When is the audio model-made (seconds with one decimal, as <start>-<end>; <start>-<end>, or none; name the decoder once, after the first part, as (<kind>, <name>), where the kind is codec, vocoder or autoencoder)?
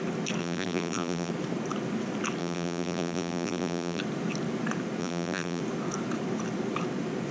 0.4-1.3 (vocoder, BigVGAN v2); 2.4-4.0; 5.0-5.6